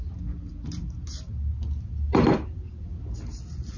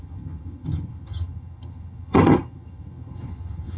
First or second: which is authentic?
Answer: first